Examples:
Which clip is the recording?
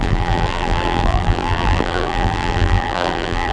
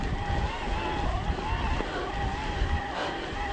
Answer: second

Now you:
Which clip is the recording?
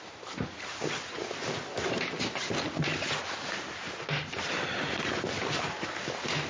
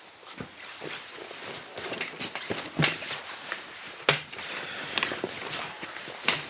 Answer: first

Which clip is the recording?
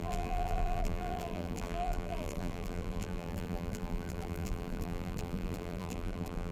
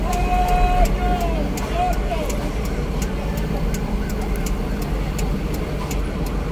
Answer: second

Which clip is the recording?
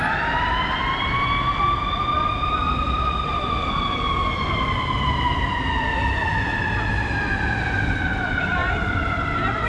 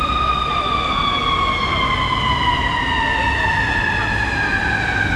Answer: second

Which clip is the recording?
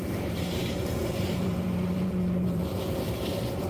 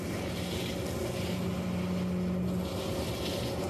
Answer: second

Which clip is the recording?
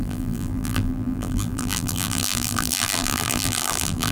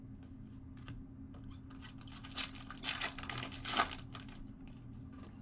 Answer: second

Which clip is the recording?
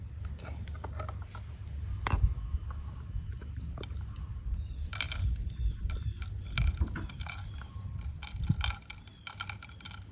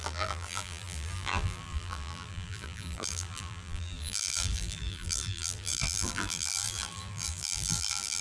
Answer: first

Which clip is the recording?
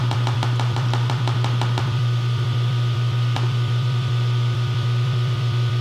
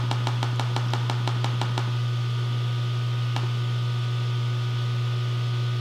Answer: second